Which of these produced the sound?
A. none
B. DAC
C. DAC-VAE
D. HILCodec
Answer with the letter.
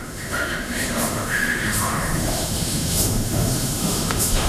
C